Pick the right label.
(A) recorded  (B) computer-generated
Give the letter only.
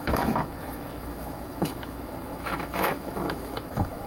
B